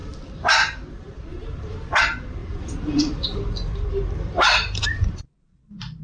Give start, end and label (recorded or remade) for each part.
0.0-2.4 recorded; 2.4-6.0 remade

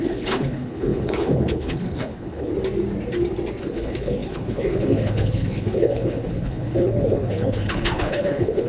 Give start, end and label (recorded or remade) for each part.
0.0-2.5 remade; 2.5-3.6 recorded; 3.6-8.7 remade

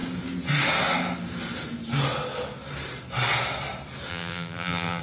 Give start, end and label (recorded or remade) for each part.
0.0-4.1 recorded; 4.1-5.0 remade

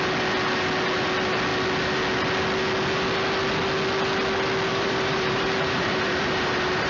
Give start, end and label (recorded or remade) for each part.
0.0-4.7 recorded; 4.7-6.9 remade

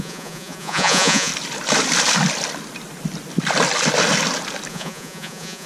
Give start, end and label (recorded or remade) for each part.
0.0-1.3 remade; 1.3-4.7 recorded; 4.7-5.7 remade

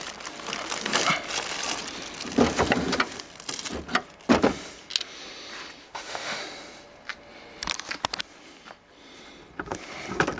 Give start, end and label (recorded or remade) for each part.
0.0-5.8 recorded; 5.8-6.4 remade; 6.4-10.4 recorded